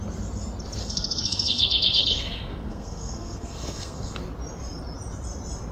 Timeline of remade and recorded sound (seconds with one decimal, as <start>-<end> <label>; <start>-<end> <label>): 0.0-0.8 recorded; 0.8-4.2 remade; 4.2-5.7 recorded